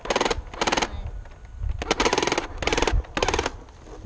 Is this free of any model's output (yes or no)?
yes